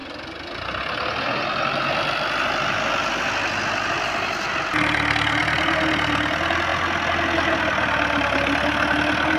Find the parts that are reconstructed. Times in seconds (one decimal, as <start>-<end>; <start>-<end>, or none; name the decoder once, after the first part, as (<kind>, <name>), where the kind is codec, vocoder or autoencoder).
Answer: none